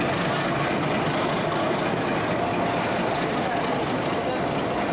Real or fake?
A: real